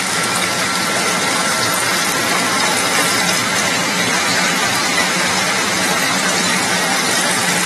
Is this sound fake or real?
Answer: real